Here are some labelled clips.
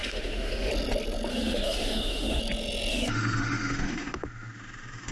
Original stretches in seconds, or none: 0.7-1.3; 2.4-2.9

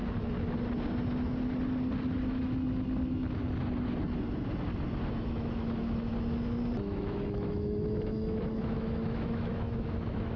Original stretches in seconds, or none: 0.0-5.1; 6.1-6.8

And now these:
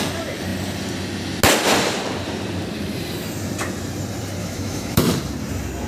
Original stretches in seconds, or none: 0.0-4.4; 5.0-5.9